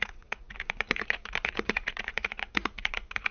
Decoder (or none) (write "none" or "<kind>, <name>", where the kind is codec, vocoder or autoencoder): vocoder, Vocos